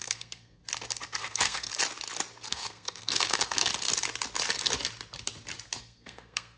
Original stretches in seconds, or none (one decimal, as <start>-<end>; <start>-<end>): 0.6-1.2; 1.7-2.5; 3.7-5.8